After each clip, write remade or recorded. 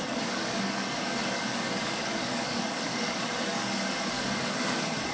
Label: remade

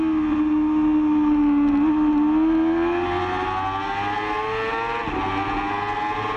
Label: recorded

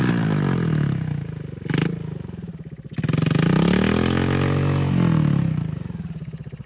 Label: recorded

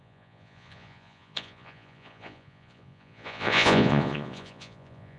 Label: remade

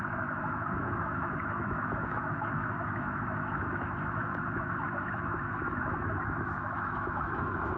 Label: remade